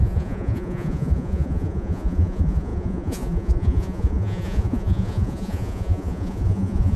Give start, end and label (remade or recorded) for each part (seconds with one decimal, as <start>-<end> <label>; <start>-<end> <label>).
0.0-7.0 remade